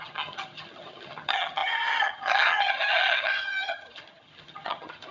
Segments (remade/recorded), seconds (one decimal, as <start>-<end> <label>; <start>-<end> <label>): 0.0-5.1 remade